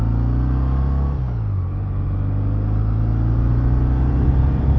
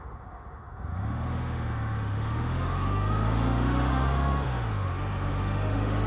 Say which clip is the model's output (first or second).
second